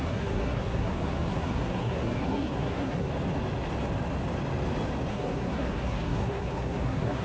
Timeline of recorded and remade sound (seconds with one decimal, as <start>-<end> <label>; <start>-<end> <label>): 0.0-3.1 remade; 3.1-5.1 recorded; 5.1-7.2 remade